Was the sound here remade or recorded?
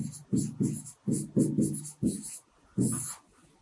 recorded